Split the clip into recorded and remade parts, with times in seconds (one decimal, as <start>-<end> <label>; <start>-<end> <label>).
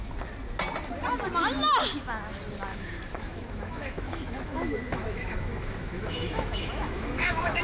0.0-2.7 recorded; 2.7-7.6 remade